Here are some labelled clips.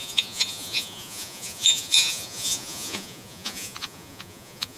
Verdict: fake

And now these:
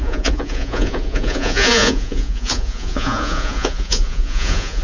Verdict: fake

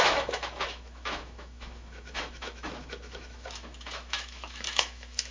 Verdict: fake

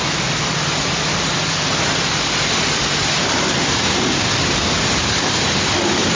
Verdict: real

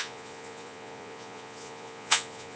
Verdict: fake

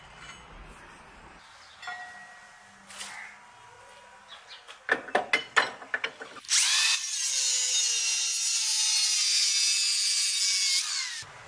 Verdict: real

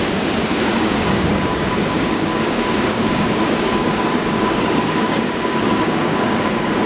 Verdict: fake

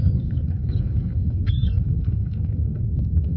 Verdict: fake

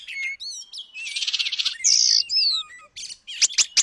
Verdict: real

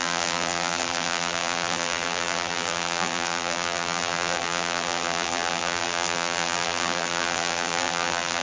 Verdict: fake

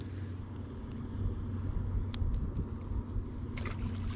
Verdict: real